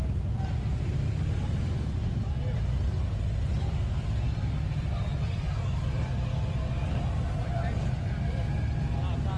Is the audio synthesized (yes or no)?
no